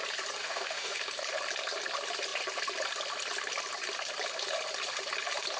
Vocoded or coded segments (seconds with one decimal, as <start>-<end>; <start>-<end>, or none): 0.4-1.0

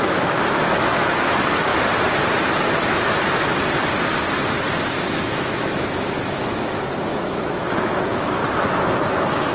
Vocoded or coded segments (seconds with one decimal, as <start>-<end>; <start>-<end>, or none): 0.0-1.7; 4.9-8.4; 9.1-9.5

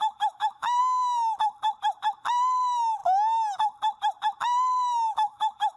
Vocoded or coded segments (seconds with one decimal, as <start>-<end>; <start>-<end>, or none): 0.0-0.8; 2.3-3.0; 4.4-5.8

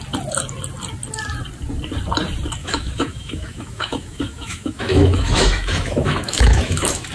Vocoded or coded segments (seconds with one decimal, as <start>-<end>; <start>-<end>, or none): 2.6-7.1